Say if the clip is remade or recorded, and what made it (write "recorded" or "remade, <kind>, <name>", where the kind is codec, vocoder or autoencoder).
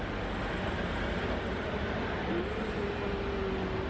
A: recorded